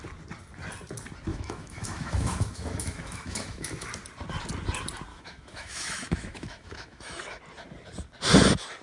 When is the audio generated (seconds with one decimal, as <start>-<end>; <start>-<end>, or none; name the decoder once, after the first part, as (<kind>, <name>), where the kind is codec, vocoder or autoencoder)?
1.3-3.9 (autoencoder, DAC-VAE); 5.1-7.2